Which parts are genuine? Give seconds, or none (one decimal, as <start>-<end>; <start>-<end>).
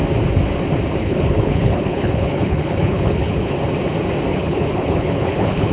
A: 0.0-1.0; 3.5-4.3